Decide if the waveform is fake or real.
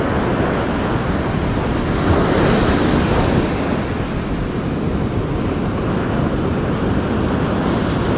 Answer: real